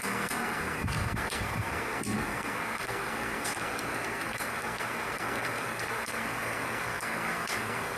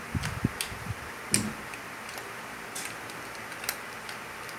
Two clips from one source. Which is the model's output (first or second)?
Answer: first